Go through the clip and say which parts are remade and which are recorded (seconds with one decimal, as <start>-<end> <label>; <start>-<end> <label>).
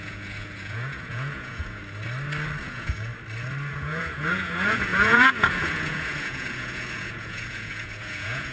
0.0-1.8 remade; 1.8-2.6 recorded; 2.6-3.1 remade; 3.1-3.7 recorded; 3.7-8.5 remade